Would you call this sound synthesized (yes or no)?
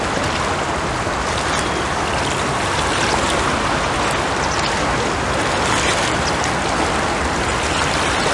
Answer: no